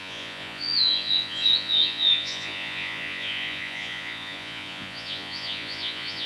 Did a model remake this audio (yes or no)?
yes